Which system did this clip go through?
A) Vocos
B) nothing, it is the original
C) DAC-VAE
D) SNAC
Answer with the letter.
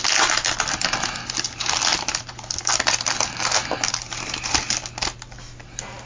B